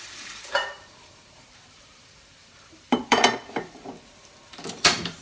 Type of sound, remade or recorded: remade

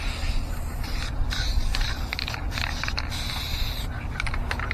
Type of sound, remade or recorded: recorded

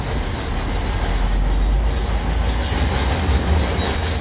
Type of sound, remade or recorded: recorded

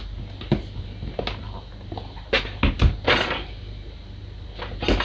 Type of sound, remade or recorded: recorded